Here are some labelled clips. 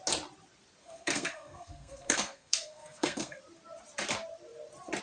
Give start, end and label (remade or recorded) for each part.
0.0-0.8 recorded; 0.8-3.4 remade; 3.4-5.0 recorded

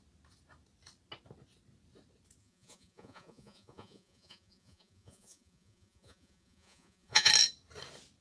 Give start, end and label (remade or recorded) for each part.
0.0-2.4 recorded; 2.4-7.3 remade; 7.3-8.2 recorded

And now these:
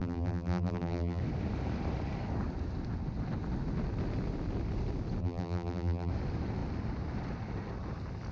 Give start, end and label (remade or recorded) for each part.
0.0-1.2 remade; 1.2-5.2 recorded; 5.2-6.1 remade; 6.1-8.3 recorded

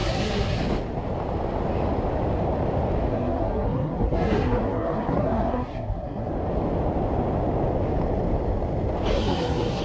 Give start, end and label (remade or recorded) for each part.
0.0-0.6 remade; 0.6-3.1 recorded; 3.1-6.3 remade; 6.3-9.1 recorded; 9.1-9.8 remade